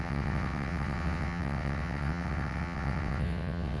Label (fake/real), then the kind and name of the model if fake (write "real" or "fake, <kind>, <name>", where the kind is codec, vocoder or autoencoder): fake, vocoder, WaveNeXt